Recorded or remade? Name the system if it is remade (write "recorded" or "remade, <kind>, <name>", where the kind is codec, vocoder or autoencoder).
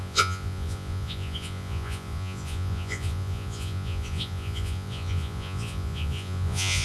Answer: remade, vocoder, Vocos